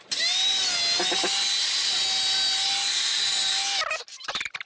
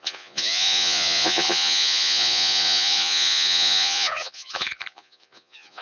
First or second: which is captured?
first